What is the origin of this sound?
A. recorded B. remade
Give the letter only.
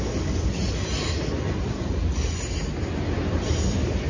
A